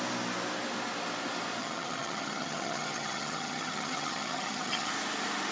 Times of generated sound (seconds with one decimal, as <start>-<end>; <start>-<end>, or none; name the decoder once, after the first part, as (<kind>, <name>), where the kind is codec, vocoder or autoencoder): 1.6-4.9 (vocoder, HiFi-GAN)